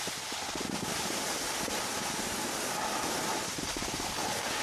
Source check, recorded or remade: recorded